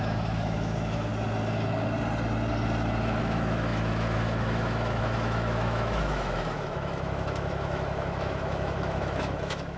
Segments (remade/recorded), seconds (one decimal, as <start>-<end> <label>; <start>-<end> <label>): 0.0-1.1 remade; 1.1-3.2 recorded; 3.2-9.8 remade